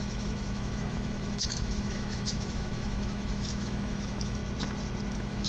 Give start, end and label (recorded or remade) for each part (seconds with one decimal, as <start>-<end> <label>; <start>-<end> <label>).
0.0-4.4 remade; 4.4-5.1 recorded; 5.1-5.5 remade